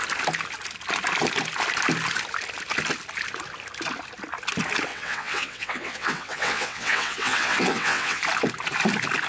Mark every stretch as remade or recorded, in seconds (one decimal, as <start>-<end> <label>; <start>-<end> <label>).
0.0-4.9 recorded; 4.9-8.2 remade; 8.2-9.3 recorded